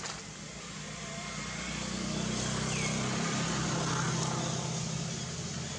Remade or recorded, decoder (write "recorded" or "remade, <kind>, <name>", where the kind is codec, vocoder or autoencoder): recorded